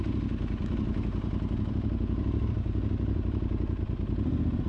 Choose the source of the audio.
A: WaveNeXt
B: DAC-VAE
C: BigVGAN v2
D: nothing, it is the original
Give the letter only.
C